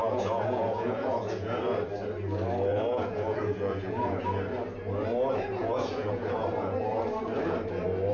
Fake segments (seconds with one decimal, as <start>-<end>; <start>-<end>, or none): 0.0-1.6; 2.7-4.2; 5.6-7.0

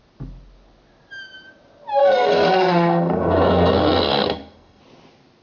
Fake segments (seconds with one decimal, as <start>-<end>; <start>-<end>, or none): 2.0-4.8

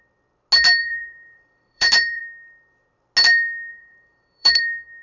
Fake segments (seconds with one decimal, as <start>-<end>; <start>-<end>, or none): 0.8-2.2; 3.7-4.6

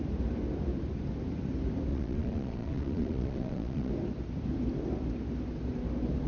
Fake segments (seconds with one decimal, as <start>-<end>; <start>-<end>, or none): 1.9-3.9

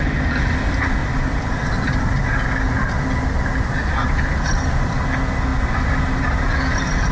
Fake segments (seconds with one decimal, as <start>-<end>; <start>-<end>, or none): 1.0-1.6